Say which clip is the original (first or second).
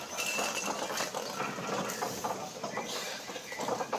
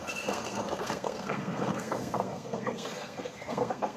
first